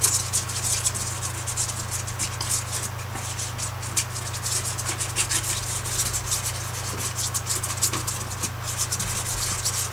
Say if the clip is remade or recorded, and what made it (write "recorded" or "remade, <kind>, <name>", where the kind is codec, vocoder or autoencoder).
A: recorded